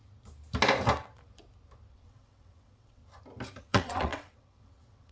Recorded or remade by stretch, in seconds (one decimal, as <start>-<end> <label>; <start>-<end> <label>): 0.0-1.9 recorded; 1.9-3.0 remade; 3.0-3.6 recorded; 3.6-5.1 remade